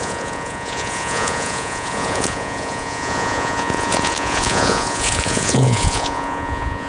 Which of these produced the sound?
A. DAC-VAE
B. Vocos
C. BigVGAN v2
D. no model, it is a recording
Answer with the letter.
B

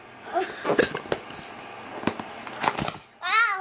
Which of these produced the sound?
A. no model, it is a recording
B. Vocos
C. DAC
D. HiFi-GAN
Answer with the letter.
A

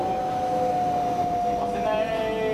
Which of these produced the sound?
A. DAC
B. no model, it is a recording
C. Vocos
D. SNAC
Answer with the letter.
B